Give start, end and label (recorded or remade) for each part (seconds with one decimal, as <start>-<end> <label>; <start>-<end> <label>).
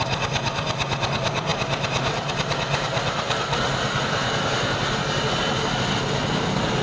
0.0-6.8 recorded